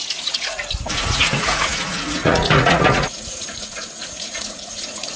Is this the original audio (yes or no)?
no